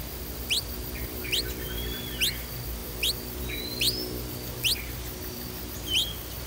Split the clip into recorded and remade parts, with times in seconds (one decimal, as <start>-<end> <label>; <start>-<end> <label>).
0.0-6.5 recorded